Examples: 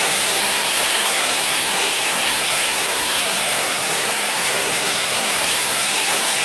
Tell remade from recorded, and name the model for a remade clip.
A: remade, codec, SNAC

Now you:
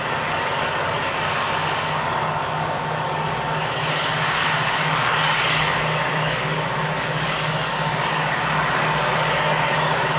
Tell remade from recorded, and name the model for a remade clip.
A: remade, codec, DAC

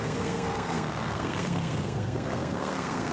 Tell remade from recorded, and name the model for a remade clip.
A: remade, codec, SNAC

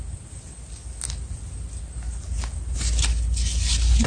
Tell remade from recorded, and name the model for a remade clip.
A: recorded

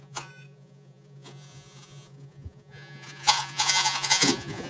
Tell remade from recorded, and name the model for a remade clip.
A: remade, vocoder, Vocos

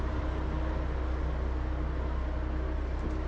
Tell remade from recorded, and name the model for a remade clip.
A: recorded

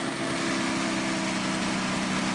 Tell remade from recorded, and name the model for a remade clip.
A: recorded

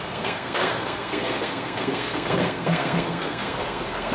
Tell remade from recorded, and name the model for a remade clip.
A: remade, codec, SNAC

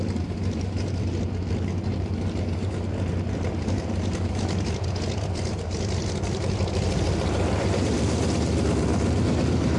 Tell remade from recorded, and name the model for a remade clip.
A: remade, vocoder, BigVGAN v2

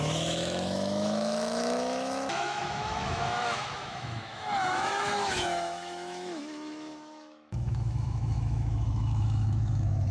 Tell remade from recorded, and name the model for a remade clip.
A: remade, autoencoder, DAC-VAE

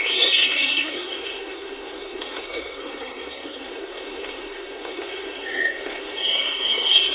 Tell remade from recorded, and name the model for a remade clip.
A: remade, codec, SNAC